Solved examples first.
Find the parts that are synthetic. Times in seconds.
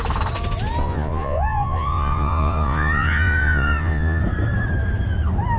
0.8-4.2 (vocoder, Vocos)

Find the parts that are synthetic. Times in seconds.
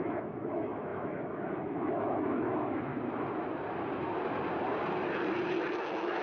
0.0-2.9 (autoencoder, DAC-VAE); 5.7-6.2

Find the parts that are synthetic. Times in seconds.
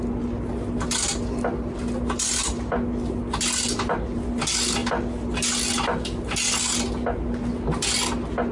none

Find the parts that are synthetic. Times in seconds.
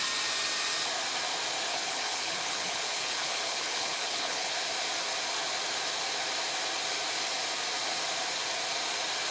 1.7-4.5 (codec, HILCodec)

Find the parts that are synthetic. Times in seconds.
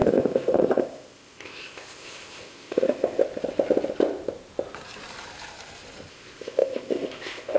0.0-3.2 (codec, ZipCodec); 6.1-7.6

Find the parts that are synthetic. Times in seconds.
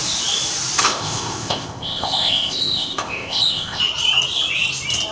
0.8-3.8 (codec, ZipCodec)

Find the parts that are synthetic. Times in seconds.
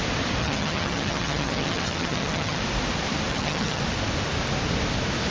0.4-2.6 (vocoder, HiFi-GAN); 3.3-3.8